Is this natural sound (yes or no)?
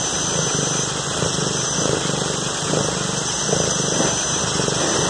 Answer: yes